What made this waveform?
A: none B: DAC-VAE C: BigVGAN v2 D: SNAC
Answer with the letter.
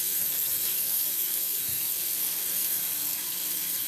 D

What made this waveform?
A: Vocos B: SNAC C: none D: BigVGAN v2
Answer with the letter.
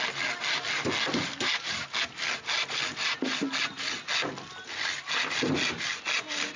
C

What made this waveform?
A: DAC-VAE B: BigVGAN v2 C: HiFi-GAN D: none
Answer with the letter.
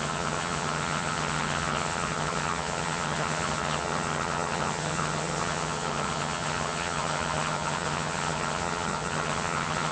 C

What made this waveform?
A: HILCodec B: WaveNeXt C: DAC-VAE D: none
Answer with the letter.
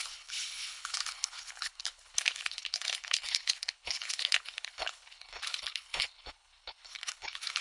A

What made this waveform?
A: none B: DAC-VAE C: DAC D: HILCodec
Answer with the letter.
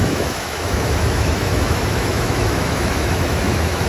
B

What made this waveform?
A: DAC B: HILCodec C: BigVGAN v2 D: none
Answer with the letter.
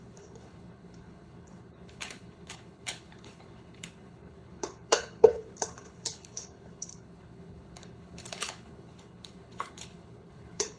B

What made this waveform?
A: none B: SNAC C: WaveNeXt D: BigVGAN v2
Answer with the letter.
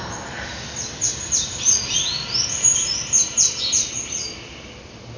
A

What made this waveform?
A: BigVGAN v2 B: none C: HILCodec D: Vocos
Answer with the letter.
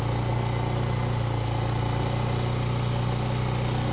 B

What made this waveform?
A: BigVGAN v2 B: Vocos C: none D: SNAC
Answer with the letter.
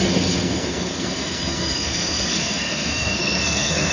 D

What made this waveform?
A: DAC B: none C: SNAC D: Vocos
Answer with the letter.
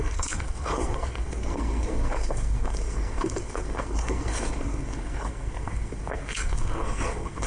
C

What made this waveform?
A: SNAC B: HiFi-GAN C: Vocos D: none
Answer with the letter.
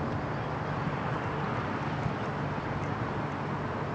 D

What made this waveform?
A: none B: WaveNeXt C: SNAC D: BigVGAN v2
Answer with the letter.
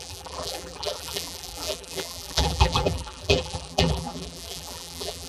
D